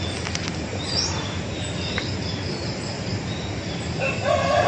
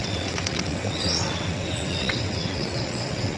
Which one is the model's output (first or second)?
second